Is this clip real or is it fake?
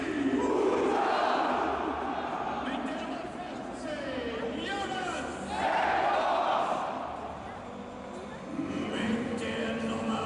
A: fake